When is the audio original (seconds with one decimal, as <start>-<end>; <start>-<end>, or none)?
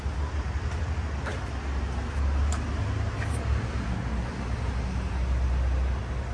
0.0-6.3